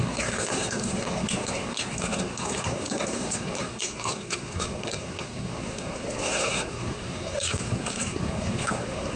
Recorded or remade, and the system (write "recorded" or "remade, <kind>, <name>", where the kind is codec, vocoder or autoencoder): remade, codec, SNAC